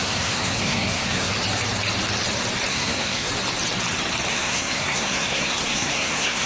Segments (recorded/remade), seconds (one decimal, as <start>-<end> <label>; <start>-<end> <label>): 0.0-1.3 remade; 1.3-2.7 recorded; 2.7-3.3 remade; 3.3-4.3 recorded; 4.3-6.5 remade